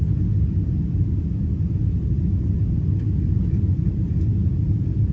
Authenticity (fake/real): real